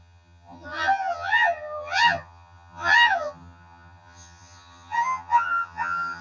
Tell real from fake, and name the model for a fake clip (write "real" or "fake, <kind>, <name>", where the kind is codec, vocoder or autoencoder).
fake, vocoder, HiFi-GAN